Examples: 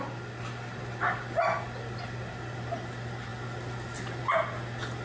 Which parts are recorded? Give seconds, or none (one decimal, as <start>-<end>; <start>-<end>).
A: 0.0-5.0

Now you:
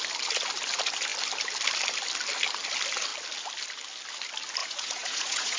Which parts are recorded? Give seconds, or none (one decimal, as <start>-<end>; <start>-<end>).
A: 0.0-4.6

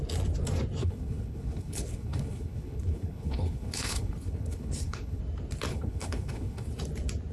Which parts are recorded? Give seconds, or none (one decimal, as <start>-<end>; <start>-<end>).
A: 0.0-0.8; 5.2-5.7; 6.7-7.3